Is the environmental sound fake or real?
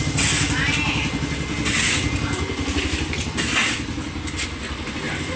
real